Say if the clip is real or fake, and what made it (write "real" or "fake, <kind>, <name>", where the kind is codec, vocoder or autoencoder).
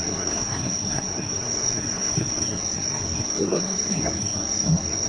fake, codec, SNAC